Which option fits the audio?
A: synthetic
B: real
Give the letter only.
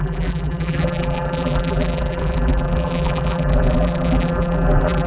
A